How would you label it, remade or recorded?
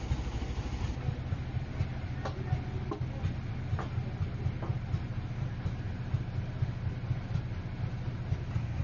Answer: recorded